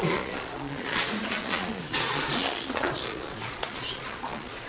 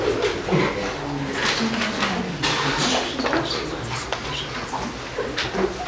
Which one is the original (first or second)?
second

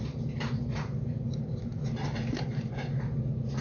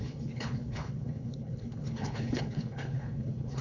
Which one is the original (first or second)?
first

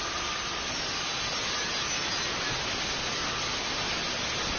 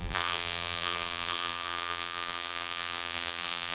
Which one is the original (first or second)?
first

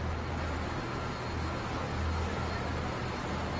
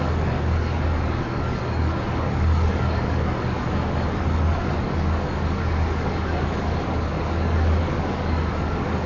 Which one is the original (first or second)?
first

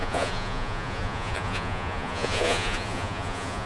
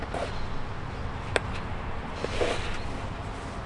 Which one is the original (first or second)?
second